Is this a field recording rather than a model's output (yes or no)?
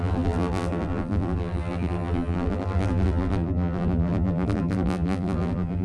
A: no